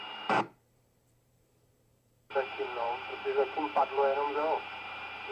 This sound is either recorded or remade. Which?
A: remade